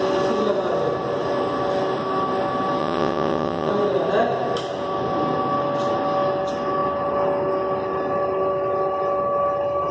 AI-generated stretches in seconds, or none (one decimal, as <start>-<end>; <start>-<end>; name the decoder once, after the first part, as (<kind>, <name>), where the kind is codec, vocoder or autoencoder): 2.8-3.7 (vocoder, WaveNeXt)